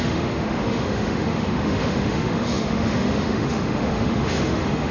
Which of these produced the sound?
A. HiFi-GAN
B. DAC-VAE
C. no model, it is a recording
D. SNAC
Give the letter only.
B